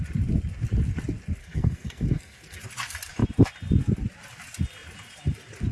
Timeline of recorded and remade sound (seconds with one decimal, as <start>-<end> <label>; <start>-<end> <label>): 0.0-1.4 recorded; 1.4-2.6 remade; 2.6-5.7 recorded